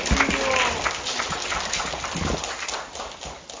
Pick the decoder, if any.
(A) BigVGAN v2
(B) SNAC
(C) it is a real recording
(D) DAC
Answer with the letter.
C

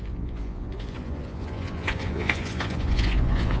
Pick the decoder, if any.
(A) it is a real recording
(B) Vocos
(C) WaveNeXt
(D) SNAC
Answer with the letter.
B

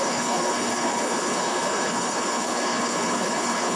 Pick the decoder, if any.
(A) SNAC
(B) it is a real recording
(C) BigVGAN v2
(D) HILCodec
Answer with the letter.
D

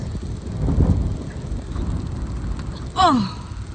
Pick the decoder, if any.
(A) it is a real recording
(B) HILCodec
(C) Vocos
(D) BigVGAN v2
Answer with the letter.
A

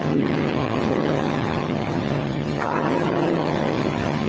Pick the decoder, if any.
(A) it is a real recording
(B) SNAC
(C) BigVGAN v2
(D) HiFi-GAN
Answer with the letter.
D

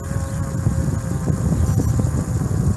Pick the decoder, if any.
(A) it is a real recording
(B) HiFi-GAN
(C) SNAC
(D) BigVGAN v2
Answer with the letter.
A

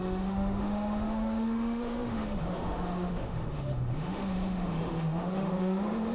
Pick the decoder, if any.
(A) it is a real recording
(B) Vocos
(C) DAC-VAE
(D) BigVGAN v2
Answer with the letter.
C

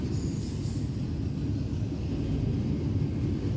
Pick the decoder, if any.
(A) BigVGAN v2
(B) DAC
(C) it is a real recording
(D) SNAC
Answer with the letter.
C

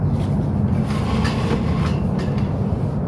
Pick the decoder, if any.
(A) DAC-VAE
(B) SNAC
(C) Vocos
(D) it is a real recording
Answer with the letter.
D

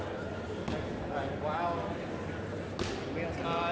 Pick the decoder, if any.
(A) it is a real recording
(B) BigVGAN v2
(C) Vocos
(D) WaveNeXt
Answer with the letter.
A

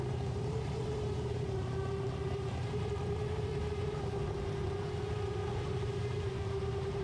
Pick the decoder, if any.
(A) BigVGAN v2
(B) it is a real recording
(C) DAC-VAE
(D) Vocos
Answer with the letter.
A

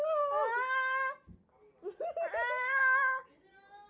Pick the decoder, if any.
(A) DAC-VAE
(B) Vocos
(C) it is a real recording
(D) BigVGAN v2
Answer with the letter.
C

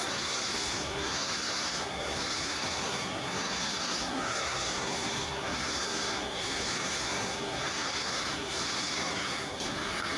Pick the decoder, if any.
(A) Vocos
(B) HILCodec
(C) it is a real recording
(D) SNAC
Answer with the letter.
D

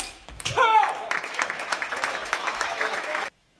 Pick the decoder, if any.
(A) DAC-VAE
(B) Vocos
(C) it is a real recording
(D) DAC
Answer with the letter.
A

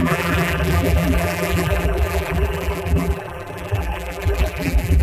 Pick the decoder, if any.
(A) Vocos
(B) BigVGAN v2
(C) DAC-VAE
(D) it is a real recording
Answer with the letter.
B